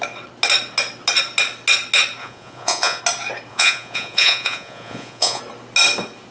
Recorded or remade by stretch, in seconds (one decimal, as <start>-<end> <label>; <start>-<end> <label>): 0.0-2.2 recorded; 2.2-3.0 remade; 3.0-3.5 recorded; 3.5-5.4 remade; 5.4-6.3 recorded